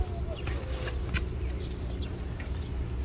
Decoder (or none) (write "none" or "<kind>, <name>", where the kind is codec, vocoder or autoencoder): none